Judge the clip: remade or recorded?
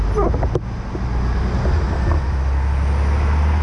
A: recorded